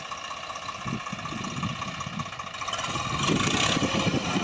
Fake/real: real